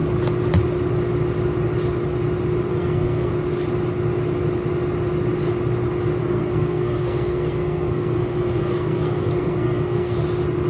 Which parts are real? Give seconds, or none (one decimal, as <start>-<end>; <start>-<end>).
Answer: 0.0-2.7; 3.3-6.2; 10.2-10.7